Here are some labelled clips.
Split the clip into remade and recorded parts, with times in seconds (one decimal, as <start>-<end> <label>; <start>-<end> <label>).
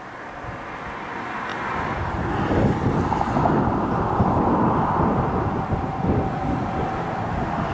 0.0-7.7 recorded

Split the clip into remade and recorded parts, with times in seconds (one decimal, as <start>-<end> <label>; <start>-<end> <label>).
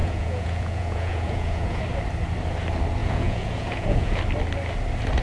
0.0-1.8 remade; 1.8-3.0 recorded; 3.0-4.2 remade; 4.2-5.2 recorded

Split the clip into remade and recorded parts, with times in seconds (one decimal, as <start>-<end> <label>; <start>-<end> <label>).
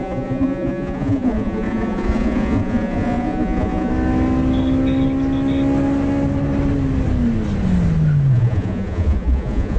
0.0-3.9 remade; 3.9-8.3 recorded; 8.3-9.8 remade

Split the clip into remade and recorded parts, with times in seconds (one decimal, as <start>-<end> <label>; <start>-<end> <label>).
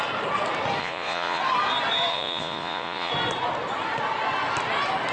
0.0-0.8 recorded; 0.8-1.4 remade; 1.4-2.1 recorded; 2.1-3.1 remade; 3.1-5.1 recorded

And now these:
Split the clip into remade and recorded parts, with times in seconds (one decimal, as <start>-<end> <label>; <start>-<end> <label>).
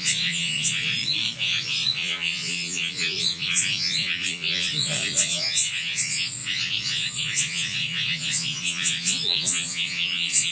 0.0-10.5 remade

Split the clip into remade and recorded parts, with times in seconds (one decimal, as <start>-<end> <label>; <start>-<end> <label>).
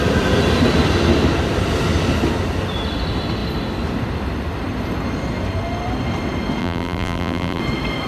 0.0-6.6 recorded; 6.6-7.6 remade; 7.6-8.1 recorded